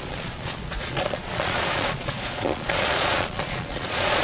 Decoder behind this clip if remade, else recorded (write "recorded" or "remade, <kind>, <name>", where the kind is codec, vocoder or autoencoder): remade, vocoder, Vocos